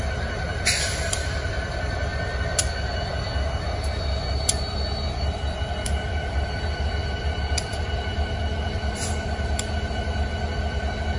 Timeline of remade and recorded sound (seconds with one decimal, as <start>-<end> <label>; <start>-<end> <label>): 0.0-2.1 remade; 2.1-5.1 recorded; 5.1-11.2 remade